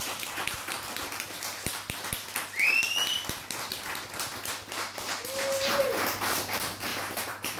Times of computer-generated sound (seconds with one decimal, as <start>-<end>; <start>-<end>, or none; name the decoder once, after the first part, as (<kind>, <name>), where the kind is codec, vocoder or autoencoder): 0.0-1.7 (vocoder, BigVGAN v2); 5.8-7.6